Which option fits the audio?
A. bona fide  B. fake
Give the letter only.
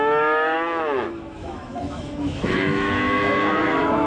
B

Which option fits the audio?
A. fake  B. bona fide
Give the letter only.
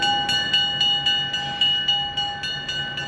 B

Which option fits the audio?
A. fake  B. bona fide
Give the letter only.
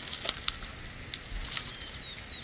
B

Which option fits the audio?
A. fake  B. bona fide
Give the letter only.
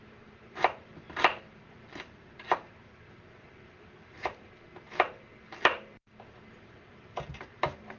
A